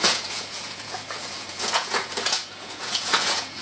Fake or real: fake